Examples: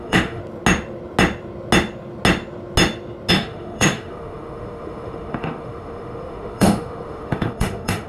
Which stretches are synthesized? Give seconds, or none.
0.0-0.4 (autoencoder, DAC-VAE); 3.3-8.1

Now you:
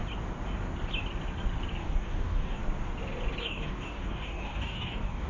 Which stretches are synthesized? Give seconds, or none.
1.8-2.6 (codec, DAC); 3.4-5.3

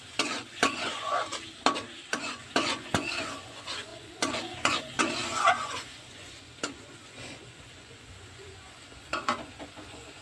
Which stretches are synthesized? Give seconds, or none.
0.0-1.2 (vocoder, Vocos); 2.1-10.2

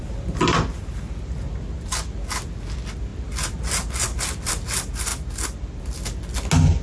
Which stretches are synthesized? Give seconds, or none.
none

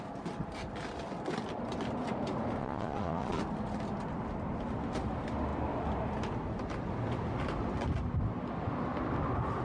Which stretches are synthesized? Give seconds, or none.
2.6-3.4 (vocoder, Vocos)